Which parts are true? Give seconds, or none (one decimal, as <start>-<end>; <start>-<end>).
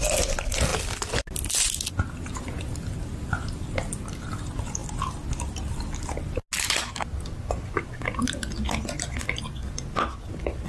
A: 0.0-10.7